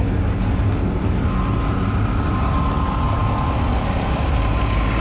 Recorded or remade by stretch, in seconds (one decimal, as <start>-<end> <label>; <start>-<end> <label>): 0.0-5.0 recorded